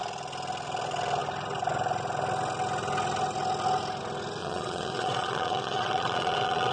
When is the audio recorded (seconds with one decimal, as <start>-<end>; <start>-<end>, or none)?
0.0-4.4